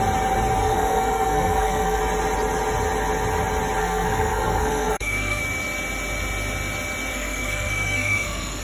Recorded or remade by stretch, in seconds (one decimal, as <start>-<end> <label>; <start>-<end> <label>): 0.0-0.6 recorded; 0.6-2.0 remade; 2.0-3.8 recorded; 3.8-5.4 remade; 5.4-7.1 recorded; 7.1-8.6 remade